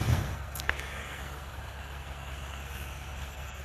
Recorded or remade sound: remade